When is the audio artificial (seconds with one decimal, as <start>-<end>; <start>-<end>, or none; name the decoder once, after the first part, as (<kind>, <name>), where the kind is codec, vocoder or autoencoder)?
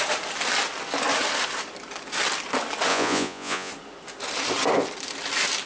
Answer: 2.9-3.7 (vocoder, Vocos)